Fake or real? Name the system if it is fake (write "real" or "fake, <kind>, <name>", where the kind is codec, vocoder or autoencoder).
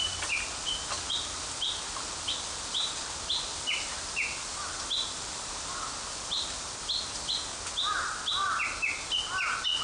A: real